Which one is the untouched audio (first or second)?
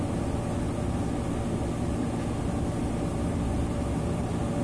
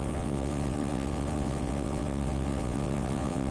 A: first